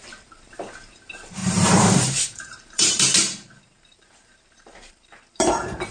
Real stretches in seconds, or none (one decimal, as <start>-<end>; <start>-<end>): none